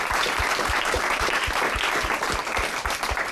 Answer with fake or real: real